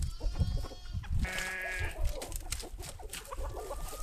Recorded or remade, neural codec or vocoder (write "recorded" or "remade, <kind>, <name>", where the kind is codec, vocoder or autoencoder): remade, vocoder, BigVGAN v2